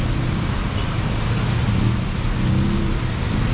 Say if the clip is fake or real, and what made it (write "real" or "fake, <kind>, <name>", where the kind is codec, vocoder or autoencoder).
real